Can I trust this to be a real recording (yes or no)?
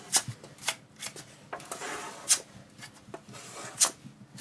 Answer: yes